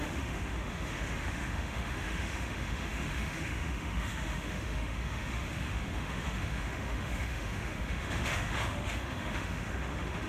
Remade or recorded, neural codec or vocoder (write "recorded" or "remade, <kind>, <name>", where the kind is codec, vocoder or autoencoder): remade, autoencoder, DAC-VAE